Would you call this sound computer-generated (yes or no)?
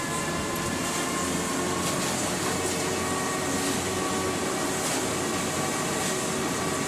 no